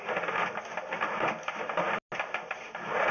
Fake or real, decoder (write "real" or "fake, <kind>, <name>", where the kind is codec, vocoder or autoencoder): real